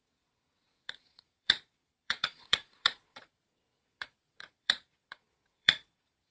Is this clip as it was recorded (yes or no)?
no